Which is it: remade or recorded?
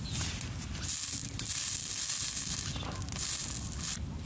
recorded